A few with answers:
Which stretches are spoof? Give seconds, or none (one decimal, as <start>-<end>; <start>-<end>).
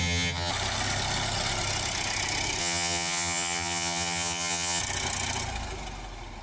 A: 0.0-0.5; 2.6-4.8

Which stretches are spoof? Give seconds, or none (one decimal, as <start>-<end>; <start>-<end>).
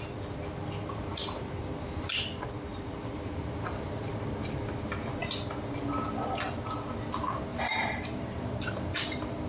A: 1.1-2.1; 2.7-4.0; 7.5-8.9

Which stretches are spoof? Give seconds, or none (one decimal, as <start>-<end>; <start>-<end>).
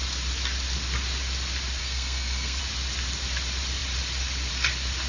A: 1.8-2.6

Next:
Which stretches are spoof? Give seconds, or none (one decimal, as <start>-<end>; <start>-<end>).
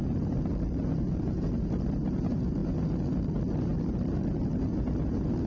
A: none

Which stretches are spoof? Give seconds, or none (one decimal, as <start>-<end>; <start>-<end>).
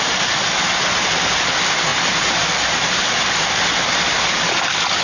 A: 1.9-3.2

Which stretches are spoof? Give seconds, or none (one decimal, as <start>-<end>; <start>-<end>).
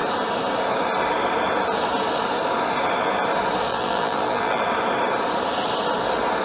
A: 3.7-4.6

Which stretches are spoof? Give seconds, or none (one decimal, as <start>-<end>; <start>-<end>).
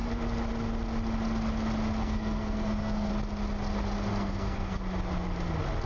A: 2.0-3.1; 4.1-4.8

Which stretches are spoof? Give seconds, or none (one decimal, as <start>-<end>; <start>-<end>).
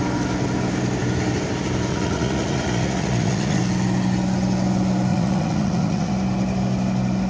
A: 1.9-3.6; 5.1-6.1